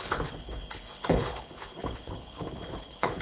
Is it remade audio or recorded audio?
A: remade